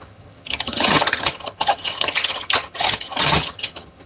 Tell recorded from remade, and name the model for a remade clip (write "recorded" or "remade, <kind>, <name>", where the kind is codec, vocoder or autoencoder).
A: remade, vocoder, HiFi-GAN